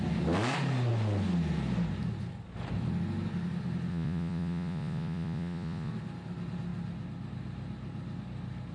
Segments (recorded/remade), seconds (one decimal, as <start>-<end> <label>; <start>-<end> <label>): 0.0-3.9 recorded; 3.9-5.9 remade; 5.9-8.7 recorded